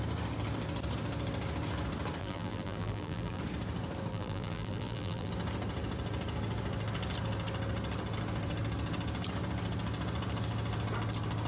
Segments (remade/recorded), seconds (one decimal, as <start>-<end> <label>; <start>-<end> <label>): 0.0-2.2 recorded; 2.2-3.4 remade; 3.4-4.1 recorded; 4.1-5.3 remade; 5.3-11.5 recorded